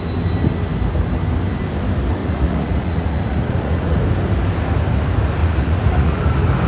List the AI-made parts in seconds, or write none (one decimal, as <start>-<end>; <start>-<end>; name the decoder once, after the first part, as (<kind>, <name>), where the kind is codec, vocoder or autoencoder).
2.2-4.0 (vocoder, Vocos); 5.4-6.2